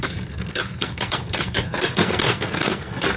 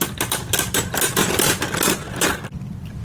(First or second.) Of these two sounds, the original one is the second